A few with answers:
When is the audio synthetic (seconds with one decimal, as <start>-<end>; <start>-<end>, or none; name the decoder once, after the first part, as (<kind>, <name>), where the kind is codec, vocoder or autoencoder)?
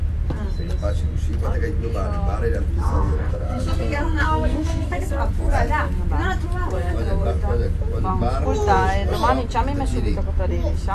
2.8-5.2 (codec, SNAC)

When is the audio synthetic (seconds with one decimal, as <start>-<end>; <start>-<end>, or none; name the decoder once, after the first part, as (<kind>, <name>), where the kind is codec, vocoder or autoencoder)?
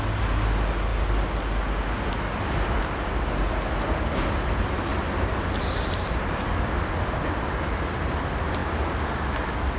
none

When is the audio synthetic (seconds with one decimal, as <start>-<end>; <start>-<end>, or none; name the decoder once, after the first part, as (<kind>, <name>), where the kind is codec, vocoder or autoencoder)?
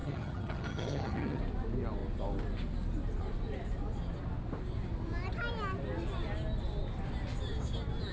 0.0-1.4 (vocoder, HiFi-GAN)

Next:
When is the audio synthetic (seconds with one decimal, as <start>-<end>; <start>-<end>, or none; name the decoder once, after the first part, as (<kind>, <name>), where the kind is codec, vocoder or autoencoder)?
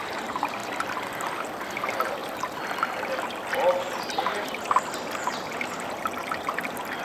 none